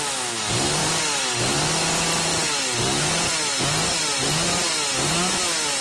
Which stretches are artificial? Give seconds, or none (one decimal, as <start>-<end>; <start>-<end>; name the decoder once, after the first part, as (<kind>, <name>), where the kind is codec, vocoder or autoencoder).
none